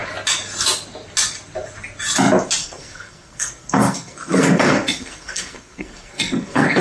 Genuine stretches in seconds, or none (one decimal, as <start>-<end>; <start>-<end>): 0.0-2.6